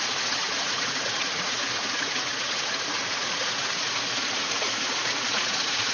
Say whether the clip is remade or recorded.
remade